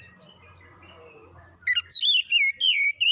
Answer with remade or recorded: recorded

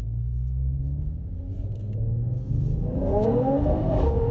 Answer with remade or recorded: remade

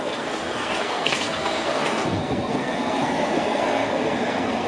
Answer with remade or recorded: remade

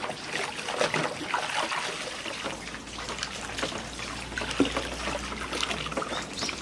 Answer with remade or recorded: recorded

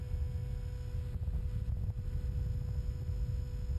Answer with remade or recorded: recorded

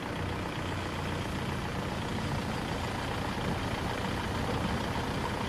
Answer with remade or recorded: recorded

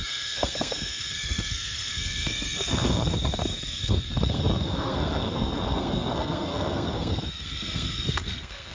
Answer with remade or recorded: remade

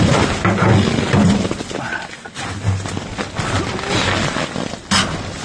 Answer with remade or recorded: recorded